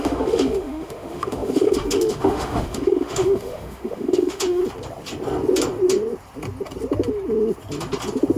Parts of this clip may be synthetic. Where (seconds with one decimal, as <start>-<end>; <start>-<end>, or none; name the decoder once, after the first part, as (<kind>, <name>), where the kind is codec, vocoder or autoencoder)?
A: 0.0-4.6 (autoencoder, DAC-VAE)